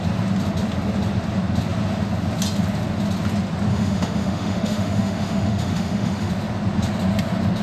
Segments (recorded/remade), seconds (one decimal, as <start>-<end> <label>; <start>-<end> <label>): 0.0-3.7 recorded; 3.7-6.3 remade; 6.3-7.6 recorded